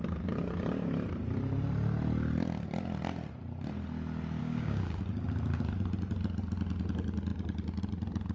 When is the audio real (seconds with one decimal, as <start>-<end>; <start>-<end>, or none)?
0.0-4.4; 5.0-8.3